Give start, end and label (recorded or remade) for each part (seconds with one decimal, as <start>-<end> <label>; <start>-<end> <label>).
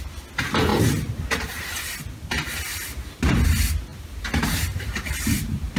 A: 0.0-0.7 recorded; 0.7-1.3 remade; 1.3-2.7 recorded; 2.7-3.3 remade; 3.3-3.9 recorded; 3.9-5.8 remade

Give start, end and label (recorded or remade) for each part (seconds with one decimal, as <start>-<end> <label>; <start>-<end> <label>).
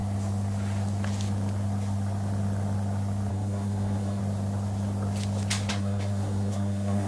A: 0.0-3.3 recorded; 3.3-4.2 remade; 4.2-5.7 recorded; 5.7-7.1 remade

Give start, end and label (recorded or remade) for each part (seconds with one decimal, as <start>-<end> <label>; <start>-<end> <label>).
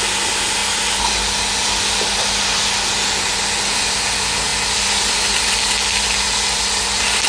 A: 0.0-7.3 recorded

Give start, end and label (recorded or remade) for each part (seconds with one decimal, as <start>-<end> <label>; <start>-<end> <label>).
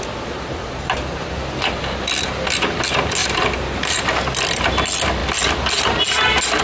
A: 0.0-3.2 recorded; 3.2-3.9 remade; 3.9-6.6 recorded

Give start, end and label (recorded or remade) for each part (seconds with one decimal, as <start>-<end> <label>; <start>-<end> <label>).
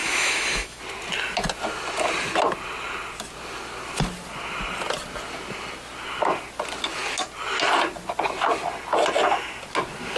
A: 0.0-0.8 remade; 0.8-10.2 recorded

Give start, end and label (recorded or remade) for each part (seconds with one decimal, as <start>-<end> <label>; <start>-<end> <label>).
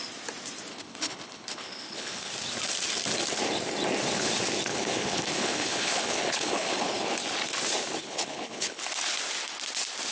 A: 0.0-0.7 recorded; 0.7-2.3 remade; 2.3-4.7 recorded; 4.7-7.1 remade; 7.1-8.0 recorded; 8.0-8.8 remade; 8.8-10.1 recorded